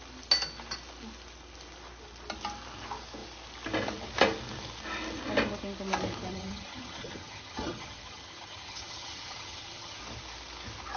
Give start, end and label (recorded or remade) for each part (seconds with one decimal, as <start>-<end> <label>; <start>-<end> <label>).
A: 0.0-6.3 recorded; 6.3-10.0 remade; 10.0-11.0 recorded

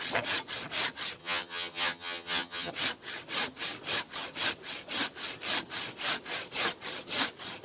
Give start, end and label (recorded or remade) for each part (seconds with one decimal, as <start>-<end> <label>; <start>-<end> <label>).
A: 0.0-1.2 recorded; 1.2-2.7 remade; 2.7-7.6 recorded

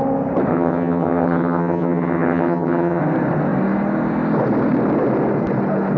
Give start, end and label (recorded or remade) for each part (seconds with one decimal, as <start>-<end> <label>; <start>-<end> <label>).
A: 0.0-0.5 recorded; 0.5-3.0 remade; 3.0-6.0 recorded

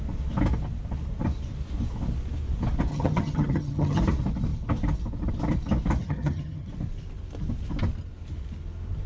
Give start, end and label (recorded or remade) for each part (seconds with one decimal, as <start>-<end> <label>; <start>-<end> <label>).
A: 0.0-2.9 recorded; 2.9-4.0 remade; 4.0-6.0 recorded; 6.0-6.7 remade; 6.7-9.1 recorded

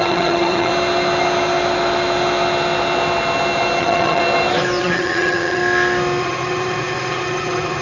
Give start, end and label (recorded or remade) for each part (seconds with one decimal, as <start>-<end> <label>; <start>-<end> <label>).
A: 0.0-0.7 remade; 0.7-3.8 recorded; 3.8-4.2 remade; 4.2-4.8 recorded; 4.8-5.6 remade; 5.6-6.2 recorded; 6.2-7.8 remade

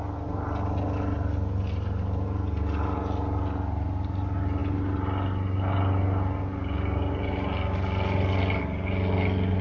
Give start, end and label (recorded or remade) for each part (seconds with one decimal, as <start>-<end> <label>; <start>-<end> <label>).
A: 0.0-9.6 recorded

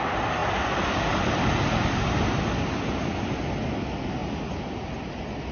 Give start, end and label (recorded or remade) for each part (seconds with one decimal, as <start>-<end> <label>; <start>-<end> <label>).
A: 0.0-5.5 recorded